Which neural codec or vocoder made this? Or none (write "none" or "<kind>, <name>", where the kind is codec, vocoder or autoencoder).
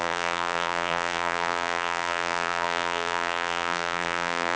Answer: vocoder, BigVGAN v2